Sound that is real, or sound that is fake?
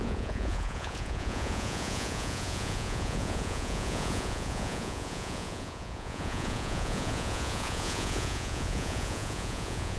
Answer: fake